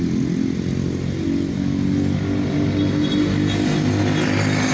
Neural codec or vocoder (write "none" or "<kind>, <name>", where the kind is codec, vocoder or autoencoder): none